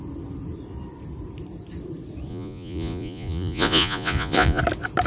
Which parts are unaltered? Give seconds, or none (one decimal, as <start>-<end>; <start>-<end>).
0.0-2.3; 4.6-5.1